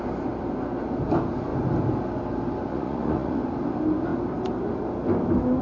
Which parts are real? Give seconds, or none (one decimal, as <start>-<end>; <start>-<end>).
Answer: 0.0-2.7; 3.4-5.6